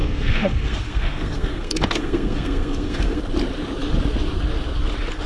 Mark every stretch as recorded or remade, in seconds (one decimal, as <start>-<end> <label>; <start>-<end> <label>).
0.0-3.2 remade; 3.2-5.3 recorded